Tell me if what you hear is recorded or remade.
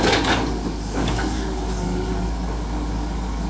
remade